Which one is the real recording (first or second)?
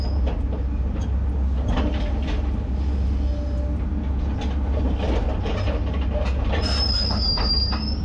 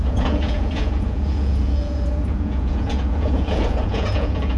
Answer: first